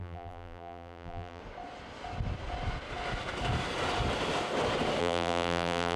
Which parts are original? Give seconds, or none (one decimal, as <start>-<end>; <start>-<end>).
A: 1.4-5.0